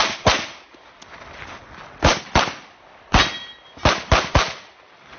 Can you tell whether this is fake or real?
real